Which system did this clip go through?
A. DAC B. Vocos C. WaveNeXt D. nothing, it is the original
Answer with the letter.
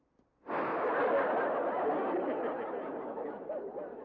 D